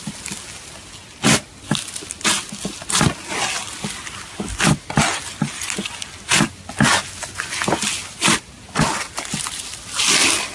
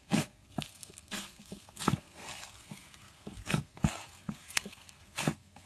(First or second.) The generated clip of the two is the second